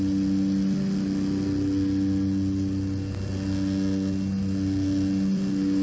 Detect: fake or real real